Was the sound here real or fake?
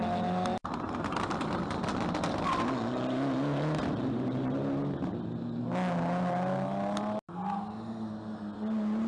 real